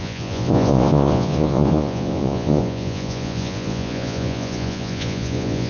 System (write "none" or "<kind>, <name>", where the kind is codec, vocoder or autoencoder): vocoder, Vocos